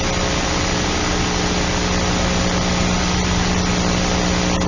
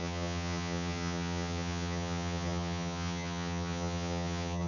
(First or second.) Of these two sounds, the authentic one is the first